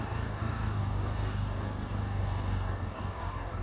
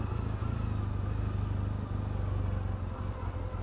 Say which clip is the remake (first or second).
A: first